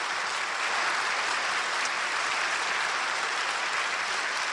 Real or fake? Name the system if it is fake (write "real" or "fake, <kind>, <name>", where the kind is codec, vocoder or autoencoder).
real